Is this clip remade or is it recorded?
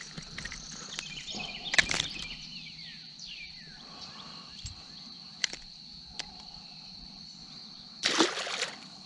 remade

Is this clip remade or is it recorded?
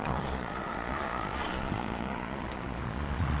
remade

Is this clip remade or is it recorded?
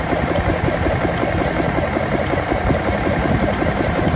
remade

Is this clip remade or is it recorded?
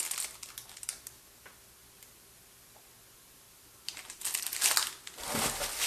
recorded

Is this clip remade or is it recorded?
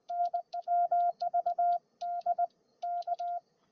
recorded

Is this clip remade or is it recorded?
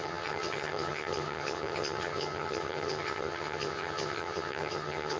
remade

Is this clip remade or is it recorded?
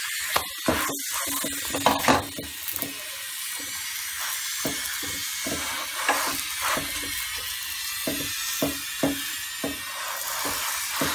recorded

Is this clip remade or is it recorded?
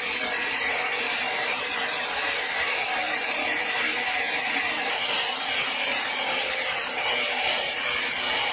recorded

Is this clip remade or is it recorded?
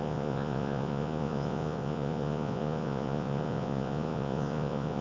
remade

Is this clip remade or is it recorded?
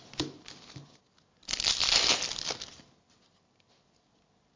recorded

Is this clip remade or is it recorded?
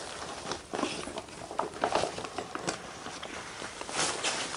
recorded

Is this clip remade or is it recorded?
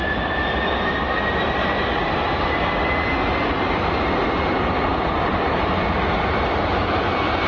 recorded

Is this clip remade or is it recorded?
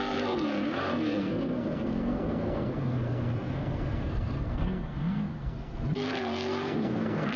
remade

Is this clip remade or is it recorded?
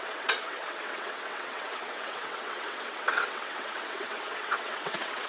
remade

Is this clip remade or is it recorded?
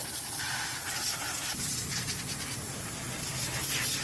recorded